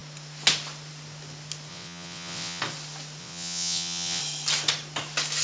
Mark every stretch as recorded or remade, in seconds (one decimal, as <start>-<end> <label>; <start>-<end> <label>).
0.0-1.7 recorded; 1.7-2.6 remade; 2.6-3.2 recorded; 3.2-4.2 remade; 4.2-5.4 recorded